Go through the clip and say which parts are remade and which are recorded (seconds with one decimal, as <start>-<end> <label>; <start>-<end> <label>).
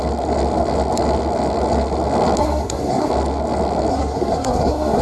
0.0-2.4 recorded; 2.4-3.1 remade; 3.1-3.9 recorded; 3.9-5.0 remade